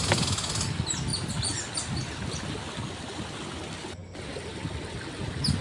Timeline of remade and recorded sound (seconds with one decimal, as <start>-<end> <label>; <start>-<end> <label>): 0.0-5.6 recorded